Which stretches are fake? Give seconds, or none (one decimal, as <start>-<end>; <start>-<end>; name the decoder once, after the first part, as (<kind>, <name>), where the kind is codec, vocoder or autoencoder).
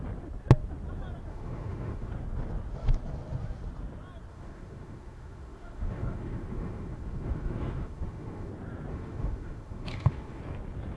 1.3-2.1 (autoencoder, DAC-VAE); 4.3-8.5; 8.9-10.4